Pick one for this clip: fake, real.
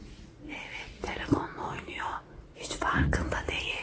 fake